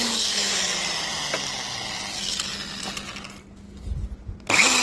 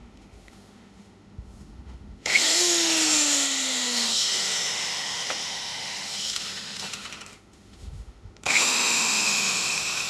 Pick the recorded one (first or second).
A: first